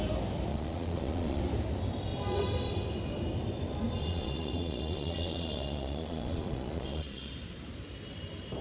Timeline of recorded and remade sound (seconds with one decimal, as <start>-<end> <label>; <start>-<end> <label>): 0.0-0.5 recorded; 0.5-1.4 remade; 1.4-4.0 recorded; 4.0-7.3 remade; 7.3-8.6 recorded